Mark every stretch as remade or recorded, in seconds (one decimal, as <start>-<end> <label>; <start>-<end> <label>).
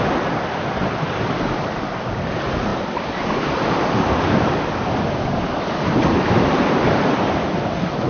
0.0-8.1 recorded